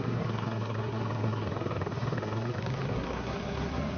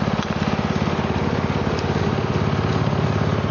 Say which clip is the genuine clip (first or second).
second